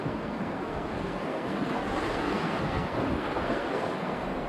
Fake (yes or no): yes